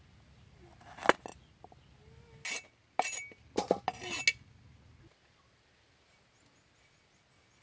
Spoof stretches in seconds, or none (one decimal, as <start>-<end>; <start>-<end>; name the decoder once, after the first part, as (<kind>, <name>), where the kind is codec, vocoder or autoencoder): none